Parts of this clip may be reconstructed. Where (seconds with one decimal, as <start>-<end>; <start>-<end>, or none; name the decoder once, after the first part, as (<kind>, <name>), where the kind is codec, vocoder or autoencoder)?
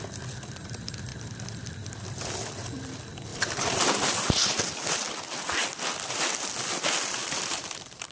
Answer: 3.3-4.3 (vocoder, BigVGAN v2); 7.2-8.1